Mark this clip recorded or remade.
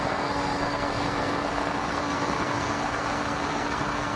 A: remade